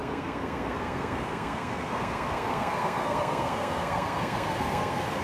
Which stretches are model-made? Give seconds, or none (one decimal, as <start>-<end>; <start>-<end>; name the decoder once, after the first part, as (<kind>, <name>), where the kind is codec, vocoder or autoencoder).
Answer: 0.0-5.2 (codec, SNAC)